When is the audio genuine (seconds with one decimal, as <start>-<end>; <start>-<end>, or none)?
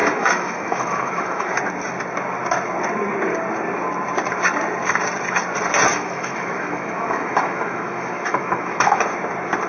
1.5-5.9; 9.0-9.7